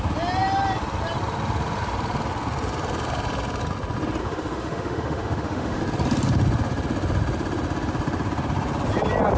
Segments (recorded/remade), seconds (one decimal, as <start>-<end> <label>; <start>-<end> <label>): 0.0-4.2 recorded; 4.2-5.8 remade; 5.8-9.4 recorded